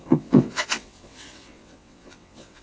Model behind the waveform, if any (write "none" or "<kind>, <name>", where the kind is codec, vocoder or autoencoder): vocoder, WaveNeXt